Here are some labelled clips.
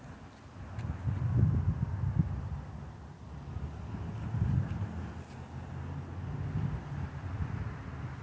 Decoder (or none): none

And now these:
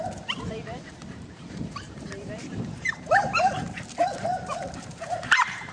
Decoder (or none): vocoder, BigVGAN v2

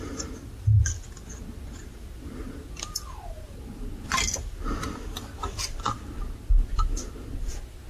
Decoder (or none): none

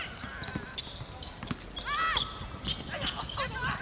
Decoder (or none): none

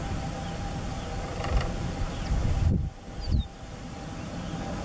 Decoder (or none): none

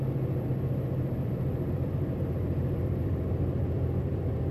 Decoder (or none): vocoder, BigVGAN v2